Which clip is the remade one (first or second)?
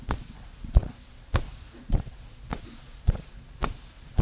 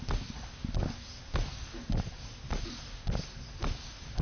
first